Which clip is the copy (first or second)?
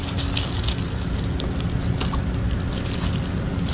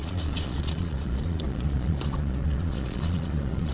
second